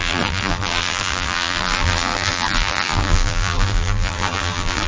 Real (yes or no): no